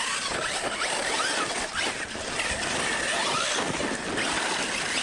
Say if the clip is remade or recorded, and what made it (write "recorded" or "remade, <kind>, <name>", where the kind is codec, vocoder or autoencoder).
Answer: recorded